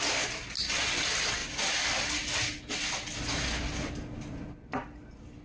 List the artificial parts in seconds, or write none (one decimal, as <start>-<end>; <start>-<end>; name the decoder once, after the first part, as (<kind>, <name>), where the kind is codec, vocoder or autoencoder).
none